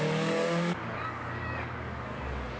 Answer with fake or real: fake